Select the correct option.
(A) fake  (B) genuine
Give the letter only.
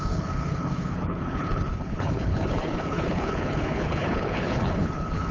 A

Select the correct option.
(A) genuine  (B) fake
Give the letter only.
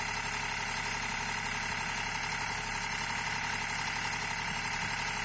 A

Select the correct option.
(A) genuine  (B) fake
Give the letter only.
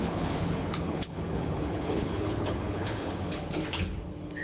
B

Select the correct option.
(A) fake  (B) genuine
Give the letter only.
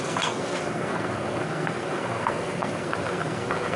A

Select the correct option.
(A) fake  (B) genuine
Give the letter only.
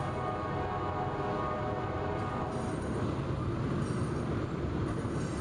B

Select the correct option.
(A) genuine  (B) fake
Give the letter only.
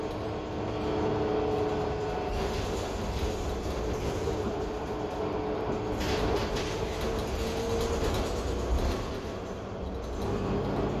A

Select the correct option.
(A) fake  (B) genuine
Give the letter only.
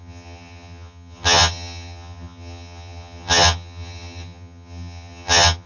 A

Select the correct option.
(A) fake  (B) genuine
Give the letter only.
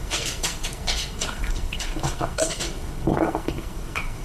A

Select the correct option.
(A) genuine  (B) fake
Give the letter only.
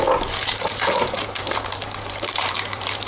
B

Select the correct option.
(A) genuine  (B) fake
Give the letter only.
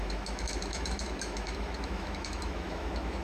B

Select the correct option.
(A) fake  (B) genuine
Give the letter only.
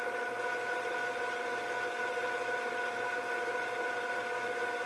B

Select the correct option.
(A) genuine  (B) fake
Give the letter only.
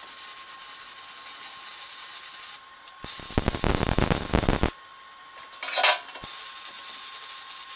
A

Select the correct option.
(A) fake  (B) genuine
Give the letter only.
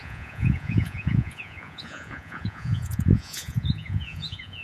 A